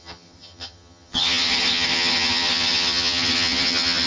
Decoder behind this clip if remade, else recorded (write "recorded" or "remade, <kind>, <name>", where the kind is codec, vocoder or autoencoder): remade, vocoder, HiFi-GAN